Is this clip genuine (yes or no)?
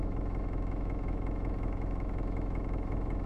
no